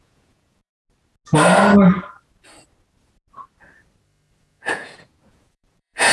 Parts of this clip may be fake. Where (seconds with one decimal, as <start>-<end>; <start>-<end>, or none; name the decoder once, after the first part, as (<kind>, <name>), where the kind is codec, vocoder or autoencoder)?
0.0-0.7 (vocoder, Vocos); 4.4-6.1